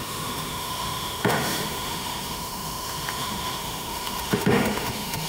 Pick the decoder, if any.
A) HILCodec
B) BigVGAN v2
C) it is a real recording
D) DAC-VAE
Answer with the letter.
D